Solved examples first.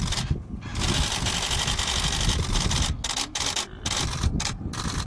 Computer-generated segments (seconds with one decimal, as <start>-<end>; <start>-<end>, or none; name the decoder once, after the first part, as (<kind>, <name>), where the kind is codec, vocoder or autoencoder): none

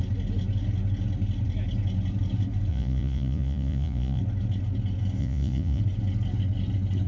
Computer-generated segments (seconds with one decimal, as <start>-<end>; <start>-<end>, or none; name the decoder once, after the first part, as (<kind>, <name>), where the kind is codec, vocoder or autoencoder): 2.7-4.2 (vocoder, Vocos); 5.2-5.8

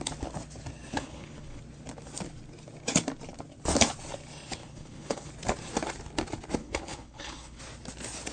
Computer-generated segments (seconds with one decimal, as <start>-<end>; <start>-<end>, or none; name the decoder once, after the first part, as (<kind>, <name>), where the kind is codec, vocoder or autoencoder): 0.9-1.6 (codec, HILCodec); 4.6-5.3; 6.6-7.6

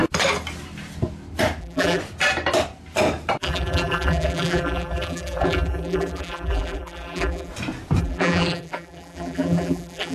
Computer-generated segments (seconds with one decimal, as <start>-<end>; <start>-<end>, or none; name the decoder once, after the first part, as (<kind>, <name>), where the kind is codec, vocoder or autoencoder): 1.6-2.0 (vocoder, BigVGAN v2); 3.4-7.5; 8.0-10.1

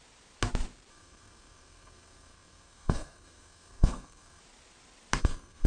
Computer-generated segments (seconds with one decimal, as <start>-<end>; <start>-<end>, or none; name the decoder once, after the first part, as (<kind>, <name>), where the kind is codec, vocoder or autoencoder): 0.9-4.4 (codec, SNAC); 5.2-5.7

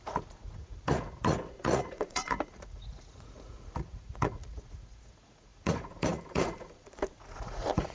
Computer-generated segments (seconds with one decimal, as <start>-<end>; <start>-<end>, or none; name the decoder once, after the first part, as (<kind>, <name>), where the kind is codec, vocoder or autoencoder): 0.0-7.9 (vocoder, Vocos)

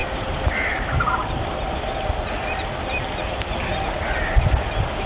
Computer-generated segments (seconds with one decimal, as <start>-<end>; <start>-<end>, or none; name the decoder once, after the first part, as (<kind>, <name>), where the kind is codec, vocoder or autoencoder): none

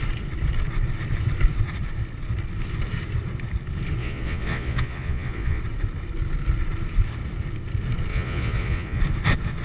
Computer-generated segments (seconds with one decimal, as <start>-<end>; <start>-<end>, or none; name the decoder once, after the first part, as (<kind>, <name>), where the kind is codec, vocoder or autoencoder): 4.0-5.6 (vocoder, Vocos); 8.1-9.0